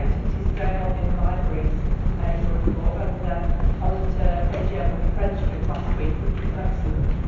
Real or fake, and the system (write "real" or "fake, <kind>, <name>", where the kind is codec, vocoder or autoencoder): real